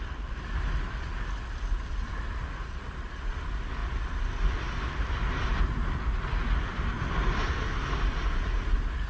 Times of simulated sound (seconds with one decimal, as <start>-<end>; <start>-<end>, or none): none